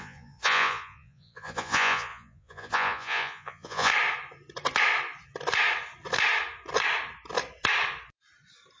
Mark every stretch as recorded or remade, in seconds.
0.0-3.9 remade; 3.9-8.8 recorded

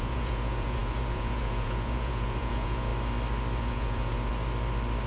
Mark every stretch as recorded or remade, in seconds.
0.0-2.9 remade; 2.9-3.6 recorded; 3.6-4.3 remade; 4.3-5.1 recorded

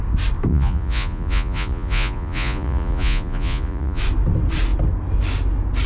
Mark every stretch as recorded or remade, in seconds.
0.0-0.5 recorded; 0.5-4.0 remade; 4.0-5.9 recorded

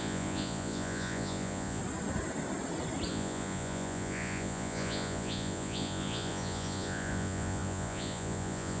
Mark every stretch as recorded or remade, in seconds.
0.0-1.8 remade; 1.8-3.1 recorded; 3.1-8.8 remade

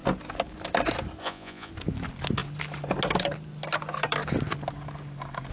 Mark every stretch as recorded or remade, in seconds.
0.0-1.2 recorded; 1.2-1.7 remade; 1.7-5.5 recorded

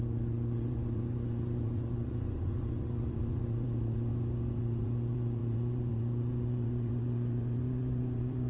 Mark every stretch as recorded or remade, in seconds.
0.0-4.1 remade; 4.1-4.6 recorded; 4.6-8.5 remade

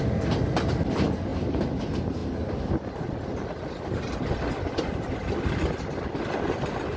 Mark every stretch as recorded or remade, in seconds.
0.0-7.0 recorded